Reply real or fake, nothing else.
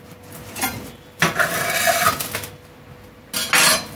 real